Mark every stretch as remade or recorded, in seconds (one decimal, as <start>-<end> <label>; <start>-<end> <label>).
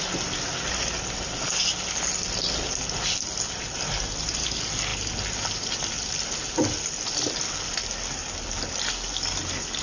0.0-9.8 recorded